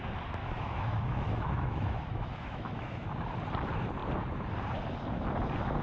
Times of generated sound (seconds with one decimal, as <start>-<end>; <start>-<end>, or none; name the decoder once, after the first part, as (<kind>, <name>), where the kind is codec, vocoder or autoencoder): 0.4-3.1 (autoencoder, DAC-VAE)